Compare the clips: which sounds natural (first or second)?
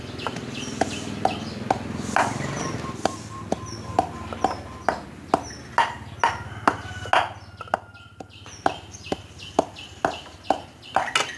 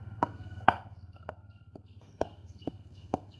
first